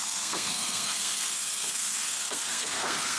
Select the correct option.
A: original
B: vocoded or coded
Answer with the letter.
B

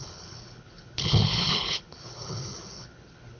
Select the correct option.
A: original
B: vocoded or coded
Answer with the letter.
B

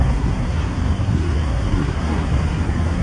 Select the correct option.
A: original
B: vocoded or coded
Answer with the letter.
B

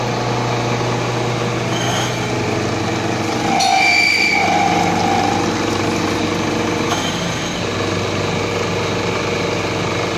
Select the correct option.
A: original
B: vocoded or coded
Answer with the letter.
A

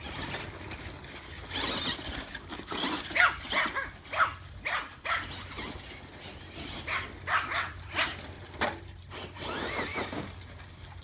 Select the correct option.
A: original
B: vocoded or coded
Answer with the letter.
A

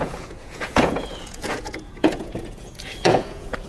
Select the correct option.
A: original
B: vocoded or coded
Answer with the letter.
B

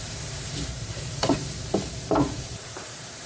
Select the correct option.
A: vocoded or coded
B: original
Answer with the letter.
A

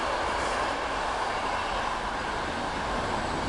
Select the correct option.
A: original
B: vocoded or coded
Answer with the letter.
A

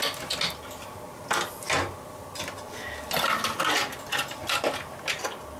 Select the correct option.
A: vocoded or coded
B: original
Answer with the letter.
B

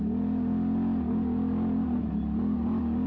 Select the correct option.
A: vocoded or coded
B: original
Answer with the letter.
B